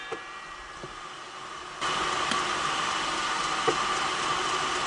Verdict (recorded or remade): recorded